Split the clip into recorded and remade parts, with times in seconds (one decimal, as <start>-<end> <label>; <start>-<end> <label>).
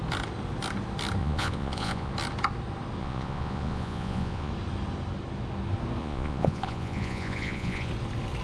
0.0-1.2 recorded; 1.2-2.1 remade; 2.1-3.0 recorded; 3.0-4.5 remade; 4.5-6.0 recorded; 6.0-7.9 remade; 7.9-8.4 recorded